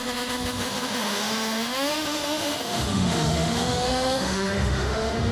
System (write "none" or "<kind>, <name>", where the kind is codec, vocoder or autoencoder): autoencoder, DAC-VAE